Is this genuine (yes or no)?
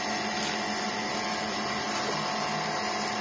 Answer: yes